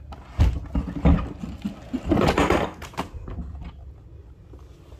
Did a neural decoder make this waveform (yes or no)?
no